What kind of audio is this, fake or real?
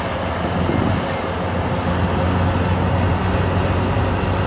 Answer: real